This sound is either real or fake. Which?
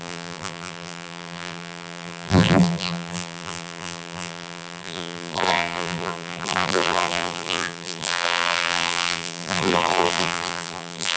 fake